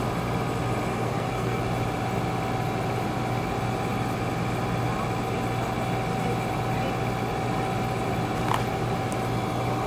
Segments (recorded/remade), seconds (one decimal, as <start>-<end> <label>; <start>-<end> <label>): 0.0-0.9 recorded; 0.9-1.6 remade; 1.6-9.9 recorded